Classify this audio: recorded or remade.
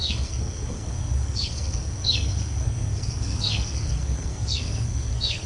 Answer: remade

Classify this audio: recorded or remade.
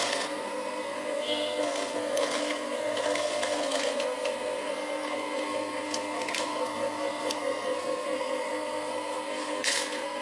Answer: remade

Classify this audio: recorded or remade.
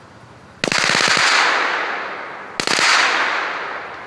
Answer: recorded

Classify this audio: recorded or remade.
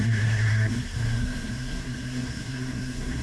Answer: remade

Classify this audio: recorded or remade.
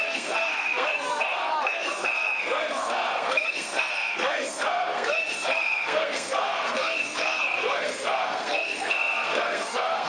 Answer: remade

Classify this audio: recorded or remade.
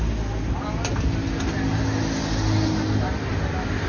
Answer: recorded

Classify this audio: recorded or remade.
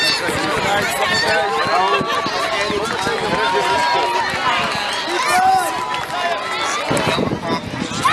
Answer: recorded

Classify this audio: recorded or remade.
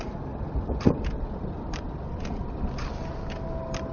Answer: recorded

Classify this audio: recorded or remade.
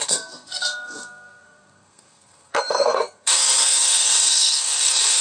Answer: remade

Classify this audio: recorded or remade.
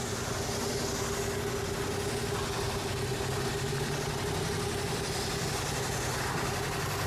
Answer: recorded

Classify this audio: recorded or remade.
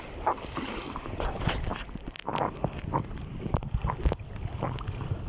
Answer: recorded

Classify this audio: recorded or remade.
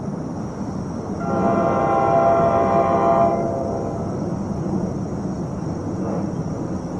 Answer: recorded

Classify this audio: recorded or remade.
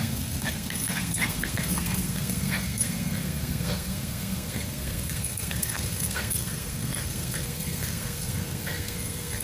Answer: remade